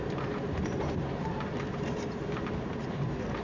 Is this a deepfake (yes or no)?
yes